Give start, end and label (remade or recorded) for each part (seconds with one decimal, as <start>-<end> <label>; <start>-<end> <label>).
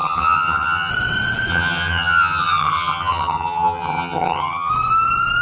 0.0-0.9 remade; 0.9-1.5 recorded; 1.5-4.7 remade; 4.7-5.4 recorded